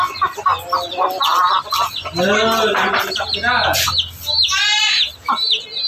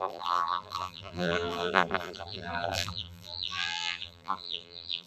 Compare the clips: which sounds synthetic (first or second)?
second